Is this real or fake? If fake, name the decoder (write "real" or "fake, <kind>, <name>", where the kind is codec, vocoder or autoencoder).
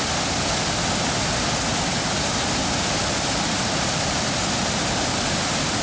fake, vocoder, BigVGAN v2